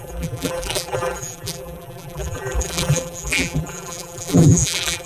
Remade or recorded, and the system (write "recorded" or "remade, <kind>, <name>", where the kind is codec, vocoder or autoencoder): remade, vocoder, BigVGAN v2